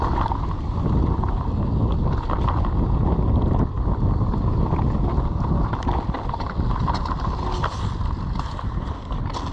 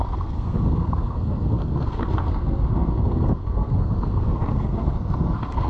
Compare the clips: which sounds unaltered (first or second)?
first